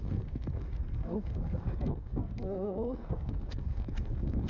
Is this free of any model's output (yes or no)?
no